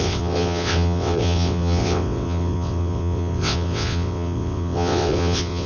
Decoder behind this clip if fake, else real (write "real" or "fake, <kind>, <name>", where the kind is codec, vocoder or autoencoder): fake, vocoder, WaveNeXt